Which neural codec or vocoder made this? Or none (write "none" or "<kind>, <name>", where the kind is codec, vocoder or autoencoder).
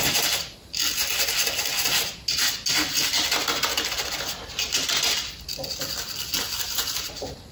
none